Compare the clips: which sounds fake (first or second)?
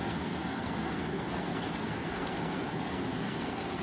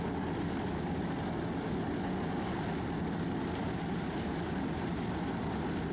first